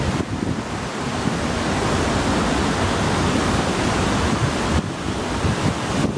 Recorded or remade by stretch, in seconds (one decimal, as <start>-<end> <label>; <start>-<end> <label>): 0.0-4.4 recorded; 4.4-5.7 remade; 5.7-6.2 recorded